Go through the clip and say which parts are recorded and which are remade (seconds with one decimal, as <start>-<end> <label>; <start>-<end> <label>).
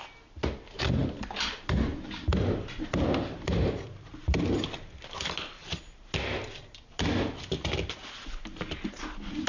0.0-9.5 recorded